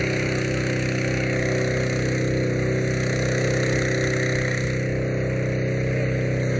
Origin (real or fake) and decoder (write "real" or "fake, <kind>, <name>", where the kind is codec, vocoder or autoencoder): real